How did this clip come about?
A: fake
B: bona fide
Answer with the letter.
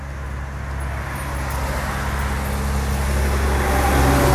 B